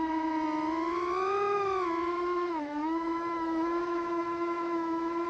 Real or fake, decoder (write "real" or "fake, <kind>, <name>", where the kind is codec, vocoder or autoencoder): fake, autoencoder, DAC-VAE